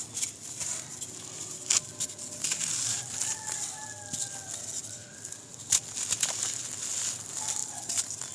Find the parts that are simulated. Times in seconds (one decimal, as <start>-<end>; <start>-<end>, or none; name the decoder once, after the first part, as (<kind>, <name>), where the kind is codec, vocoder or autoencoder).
none